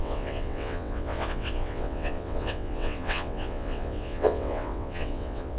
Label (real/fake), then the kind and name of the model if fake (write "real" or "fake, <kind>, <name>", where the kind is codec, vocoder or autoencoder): fake, vocoder, WaveNeXt